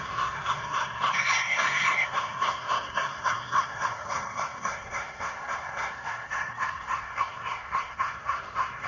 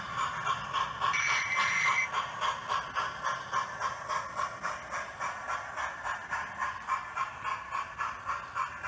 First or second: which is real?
second